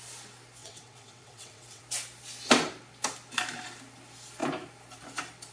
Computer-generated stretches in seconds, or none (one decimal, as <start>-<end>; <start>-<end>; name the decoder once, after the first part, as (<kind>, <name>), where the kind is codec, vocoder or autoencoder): 0.6-1.8 (vocoder, WaveNeXt)